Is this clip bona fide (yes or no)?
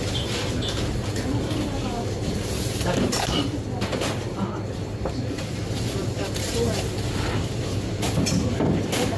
yes